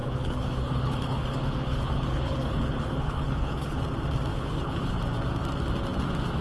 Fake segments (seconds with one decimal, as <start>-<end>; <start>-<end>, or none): 0.0-3.8; 4.3-5.0